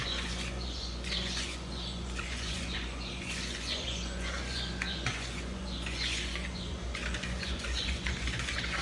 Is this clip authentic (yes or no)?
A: no